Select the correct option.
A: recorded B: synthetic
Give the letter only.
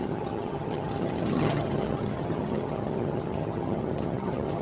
B